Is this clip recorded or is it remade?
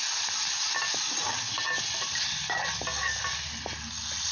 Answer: recorded